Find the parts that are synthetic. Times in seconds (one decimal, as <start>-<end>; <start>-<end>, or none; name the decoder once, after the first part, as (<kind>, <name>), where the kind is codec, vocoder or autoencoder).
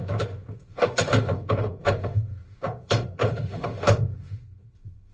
0.0-5.1 (autoencoder, DAC-VAE)